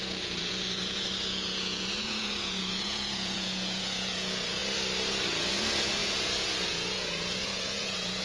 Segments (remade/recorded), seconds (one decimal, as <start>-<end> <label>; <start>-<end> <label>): 0.0-4.6 remade; 4.6-5.3 recorded; 5.3-8.2 remade